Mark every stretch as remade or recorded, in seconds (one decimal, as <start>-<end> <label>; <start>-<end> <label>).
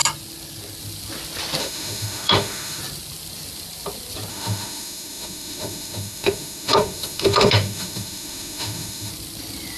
0.0-1.6 recorded; 1.6-2.8 remade; 2.8-4.3 recorded; 4.3-9.1 remade; 9.1-9.8 recorded